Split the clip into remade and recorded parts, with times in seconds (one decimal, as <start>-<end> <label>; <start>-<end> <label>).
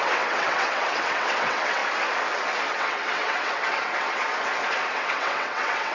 0.0-1.8 remade; 1.8-2.7 recorded; 2.7-4.3 remade; 4.3-4.9 recorded; 4.9-5.9 remade